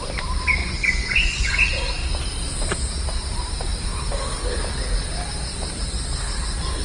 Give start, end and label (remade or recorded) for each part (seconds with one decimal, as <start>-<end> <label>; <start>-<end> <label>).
0.0-0.6 recorded; 0.6-1.5 remade; 1.5-6.8 recorded